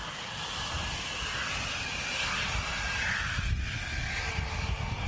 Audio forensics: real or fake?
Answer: real